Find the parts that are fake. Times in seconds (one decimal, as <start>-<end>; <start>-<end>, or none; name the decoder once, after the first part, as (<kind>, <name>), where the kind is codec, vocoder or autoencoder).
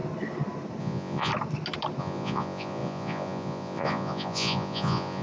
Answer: 0.8-1.3 (vocoder, Vocos); 2.0-5.2